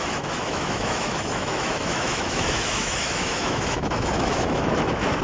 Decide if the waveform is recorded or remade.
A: remade